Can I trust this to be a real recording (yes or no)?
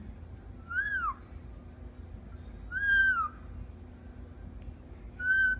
yes